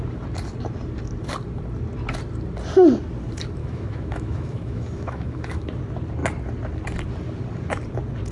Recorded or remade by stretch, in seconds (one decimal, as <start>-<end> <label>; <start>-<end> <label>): 0.0-3.6 recorded; 3.6-5.8 remade; 5.8-8.3 recorded